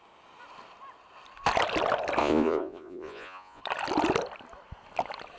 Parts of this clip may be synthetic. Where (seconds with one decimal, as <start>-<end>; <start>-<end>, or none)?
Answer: 2.2-3.6